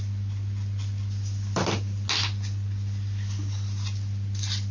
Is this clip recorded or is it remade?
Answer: recorded